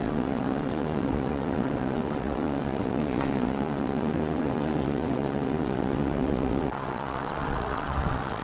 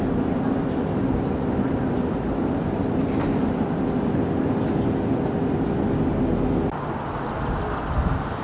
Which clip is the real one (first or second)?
second